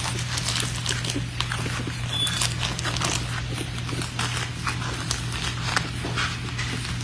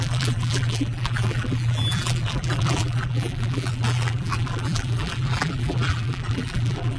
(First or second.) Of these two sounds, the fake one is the second